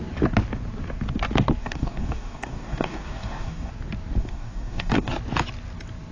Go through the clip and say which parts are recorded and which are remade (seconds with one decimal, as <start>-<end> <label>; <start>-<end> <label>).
0.0-1.6 recorded; 1.6-3.7 remade; 3.7-4.2 recorded; 4.2-5.1 remade; 5.1-6.1 recorded